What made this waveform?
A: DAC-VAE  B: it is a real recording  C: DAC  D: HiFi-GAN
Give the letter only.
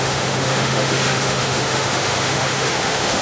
A